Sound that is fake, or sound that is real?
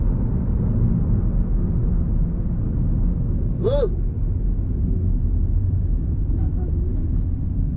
real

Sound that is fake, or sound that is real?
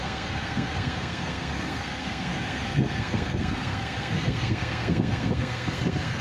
fake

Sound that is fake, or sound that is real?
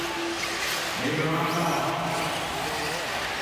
real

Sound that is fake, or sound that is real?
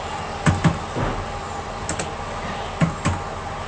real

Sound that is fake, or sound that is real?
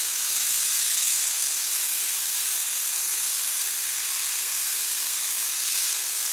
fake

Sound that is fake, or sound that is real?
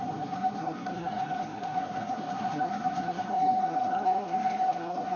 fake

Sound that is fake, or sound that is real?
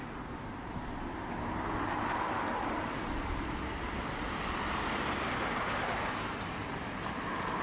real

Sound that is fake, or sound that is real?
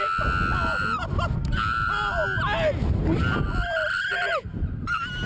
real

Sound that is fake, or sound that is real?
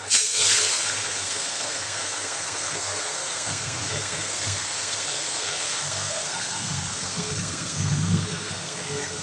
fake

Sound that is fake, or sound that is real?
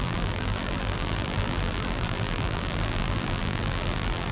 fake